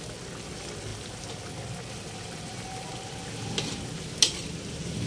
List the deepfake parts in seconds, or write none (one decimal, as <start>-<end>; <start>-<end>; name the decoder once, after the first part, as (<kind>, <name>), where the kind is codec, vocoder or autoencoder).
none